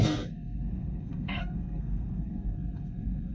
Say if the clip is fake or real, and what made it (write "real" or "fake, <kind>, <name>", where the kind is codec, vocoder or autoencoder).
fake, codec, SNAC